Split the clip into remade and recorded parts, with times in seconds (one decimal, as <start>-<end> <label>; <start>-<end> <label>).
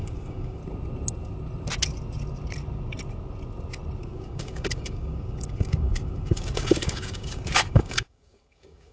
0.0-0.6 remade; 0.6-4.0 recorded; 4.0-8.9 remade